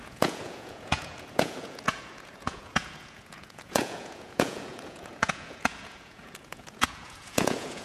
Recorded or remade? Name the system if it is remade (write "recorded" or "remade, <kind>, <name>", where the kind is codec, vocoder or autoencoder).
remade, vocoder, Vocos